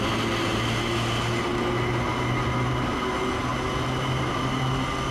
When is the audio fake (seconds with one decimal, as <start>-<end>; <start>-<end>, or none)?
none